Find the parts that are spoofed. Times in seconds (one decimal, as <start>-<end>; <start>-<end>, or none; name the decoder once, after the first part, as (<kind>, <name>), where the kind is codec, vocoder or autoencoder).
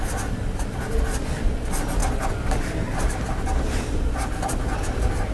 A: none